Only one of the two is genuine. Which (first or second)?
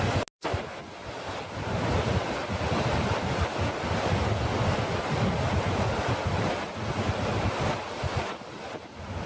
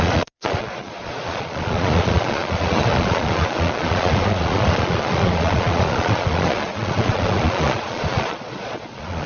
first